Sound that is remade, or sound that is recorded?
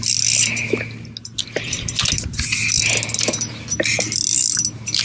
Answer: recorded